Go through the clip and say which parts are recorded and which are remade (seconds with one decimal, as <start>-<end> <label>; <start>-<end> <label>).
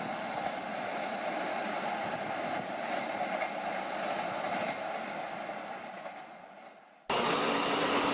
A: 0.0-8.1 recorded